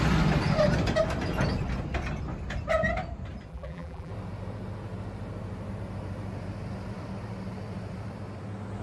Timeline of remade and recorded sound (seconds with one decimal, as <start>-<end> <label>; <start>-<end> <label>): 0.0-3.5 recorded; 3.5-4.1 remade; 4.1-8.8 recorded